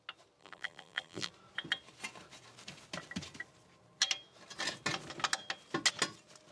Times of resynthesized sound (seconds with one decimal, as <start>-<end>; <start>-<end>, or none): 0.4-1.3